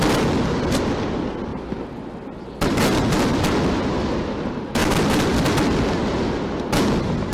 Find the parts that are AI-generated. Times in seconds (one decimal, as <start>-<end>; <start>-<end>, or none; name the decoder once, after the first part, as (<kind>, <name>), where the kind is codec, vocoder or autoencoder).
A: none

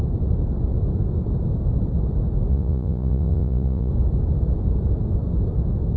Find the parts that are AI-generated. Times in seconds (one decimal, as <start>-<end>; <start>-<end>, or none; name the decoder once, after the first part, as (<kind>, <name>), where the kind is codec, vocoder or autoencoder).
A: 2.5-3.9 (vocoder, Vocos)

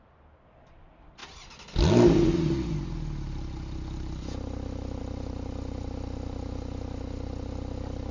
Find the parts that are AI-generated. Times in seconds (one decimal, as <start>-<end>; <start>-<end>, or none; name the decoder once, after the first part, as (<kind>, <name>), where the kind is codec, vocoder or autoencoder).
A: none

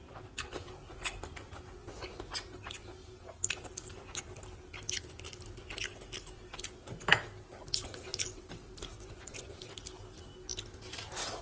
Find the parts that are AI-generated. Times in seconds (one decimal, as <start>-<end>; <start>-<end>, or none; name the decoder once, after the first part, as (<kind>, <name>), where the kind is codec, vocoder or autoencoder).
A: 8.9-9.5 (vocoder, Vocos)